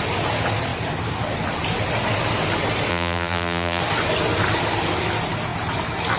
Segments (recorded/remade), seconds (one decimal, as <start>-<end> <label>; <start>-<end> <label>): 0.0-2.9 recorded; 2.9-3.8 remade; 3.8-6.2 recorded